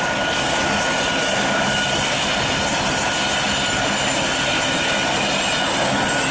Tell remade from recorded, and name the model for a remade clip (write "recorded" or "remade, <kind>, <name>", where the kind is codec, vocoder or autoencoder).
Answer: recorded